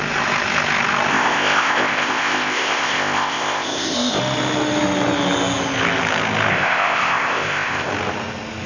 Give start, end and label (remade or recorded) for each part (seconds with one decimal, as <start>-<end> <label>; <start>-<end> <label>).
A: 0.0-1.1 recorded; 1.1-4.2 remade; 4.2-6.5 recorded; 6.5-7.9 remade; 7.9-8.7 recorded